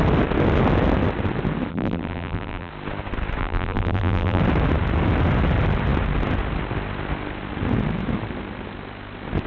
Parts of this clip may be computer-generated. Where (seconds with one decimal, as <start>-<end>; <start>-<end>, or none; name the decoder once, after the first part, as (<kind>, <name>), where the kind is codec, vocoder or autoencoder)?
1.7-2.7 (vocoder, BigVGAN v2); 3.4-4.4